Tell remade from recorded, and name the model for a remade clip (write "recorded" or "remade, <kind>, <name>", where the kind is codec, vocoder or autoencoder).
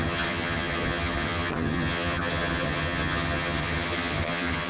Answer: remade, vocoder, HiFi-GAN